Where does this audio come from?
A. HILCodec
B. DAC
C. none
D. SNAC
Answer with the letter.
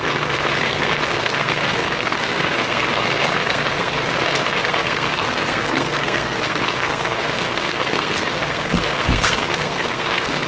D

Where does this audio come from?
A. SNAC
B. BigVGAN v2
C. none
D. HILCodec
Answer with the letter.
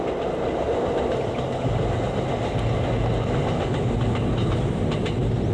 C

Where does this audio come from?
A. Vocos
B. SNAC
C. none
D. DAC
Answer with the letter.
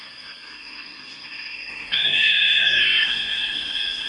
B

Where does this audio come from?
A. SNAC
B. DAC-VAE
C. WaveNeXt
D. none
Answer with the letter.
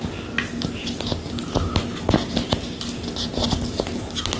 D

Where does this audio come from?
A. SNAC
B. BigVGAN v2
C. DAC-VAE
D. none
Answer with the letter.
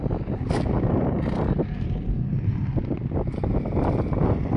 D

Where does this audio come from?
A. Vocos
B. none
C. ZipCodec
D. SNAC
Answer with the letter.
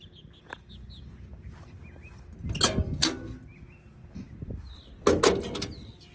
B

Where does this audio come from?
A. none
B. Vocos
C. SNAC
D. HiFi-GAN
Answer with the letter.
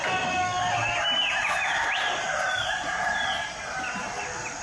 A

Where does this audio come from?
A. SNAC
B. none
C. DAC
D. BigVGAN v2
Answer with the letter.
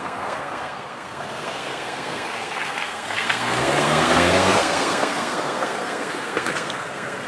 A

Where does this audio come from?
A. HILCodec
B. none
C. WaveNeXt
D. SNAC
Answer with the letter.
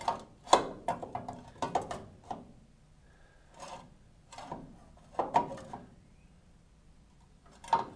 B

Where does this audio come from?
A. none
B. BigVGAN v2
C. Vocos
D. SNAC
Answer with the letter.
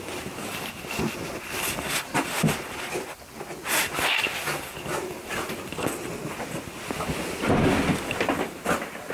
A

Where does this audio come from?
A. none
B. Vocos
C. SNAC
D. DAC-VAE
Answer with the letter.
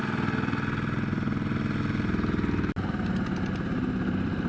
A